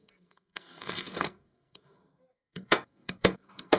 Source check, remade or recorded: remade